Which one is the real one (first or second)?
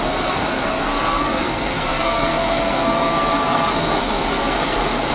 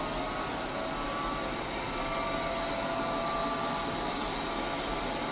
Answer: second